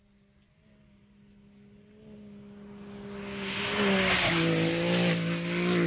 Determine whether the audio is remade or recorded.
recorded